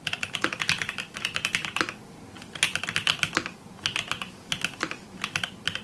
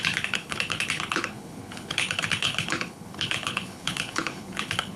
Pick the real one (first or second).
first